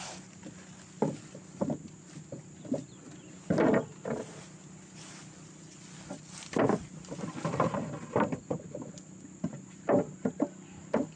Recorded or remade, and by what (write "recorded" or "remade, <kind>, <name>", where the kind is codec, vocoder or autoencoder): recorded